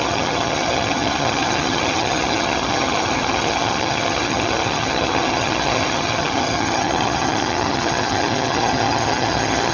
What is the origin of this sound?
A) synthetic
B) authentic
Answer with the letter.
A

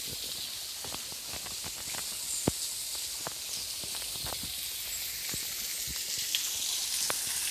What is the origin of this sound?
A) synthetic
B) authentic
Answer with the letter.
B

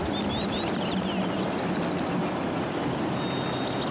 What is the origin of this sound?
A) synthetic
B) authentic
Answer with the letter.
B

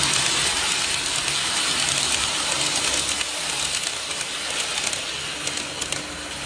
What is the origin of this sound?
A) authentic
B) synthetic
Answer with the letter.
A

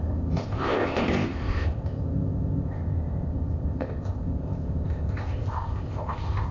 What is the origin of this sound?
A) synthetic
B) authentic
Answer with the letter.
A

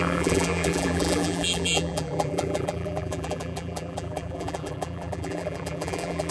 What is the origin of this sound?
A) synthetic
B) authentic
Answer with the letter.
A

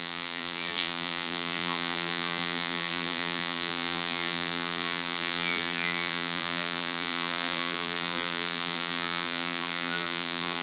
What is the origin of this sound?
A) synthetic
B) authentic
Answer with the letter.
A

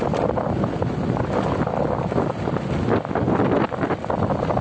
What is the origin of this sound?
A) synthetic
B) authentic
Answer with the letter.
B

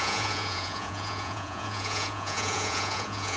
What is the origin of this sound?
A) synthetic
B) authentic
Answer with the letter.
A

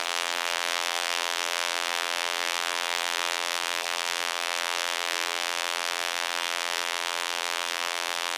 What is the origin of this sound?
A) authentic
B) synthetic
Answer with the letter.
B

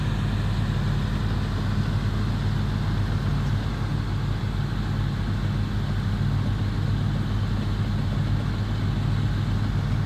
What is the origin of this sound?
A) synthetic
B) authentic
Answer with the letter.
B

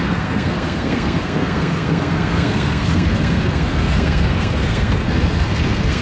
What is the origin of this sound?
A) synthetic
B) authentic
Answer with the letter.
A